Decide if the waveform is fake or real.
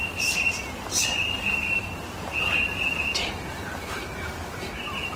real